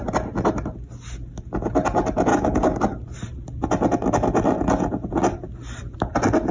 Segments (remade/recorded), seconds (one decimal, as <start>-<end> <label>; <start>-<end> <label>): 0.0-2.3 recorded; 2.3-2.8 remade; 2.8-6.5 recorded

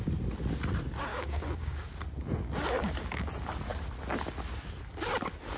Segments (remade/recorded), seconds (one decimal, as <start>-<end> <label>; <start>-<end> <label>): 0.0-1.1 recorded; 1.1-1.9 remade; 1.9-2.8 recorded; 2.8-3.3 remade; 3.3-5.6 recorded

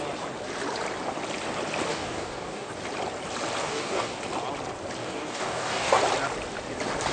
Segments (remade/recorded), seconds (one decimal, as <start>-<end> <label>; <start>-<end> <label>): 0.0-1.9 recorded; 1.9-2.7 remade; 2.7-3.6 recorded; 3.6-4.2 remade; 4.2-5.0 recorded; 5.0-6.0 remade; 6.0-7.1 recorded

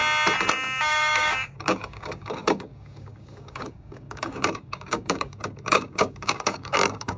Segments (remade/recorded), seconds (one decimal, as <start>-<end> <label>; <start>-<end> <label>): 0.0-0.8 recorded; 0.8-7.2 remade

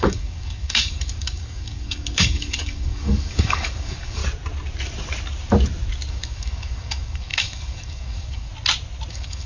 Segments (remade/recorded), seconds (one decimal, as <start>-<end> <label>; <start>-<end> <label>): 0.0-4.2 remade; 4.2-6.1 recorded; 6.1-8.5 remade; 8.5-9.1 recorded; 9.1-9.5 remade